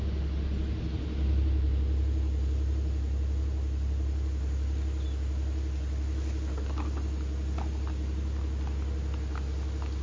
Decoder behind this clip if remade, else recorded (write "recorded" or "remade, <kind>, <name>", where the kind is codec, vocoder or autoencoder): recorded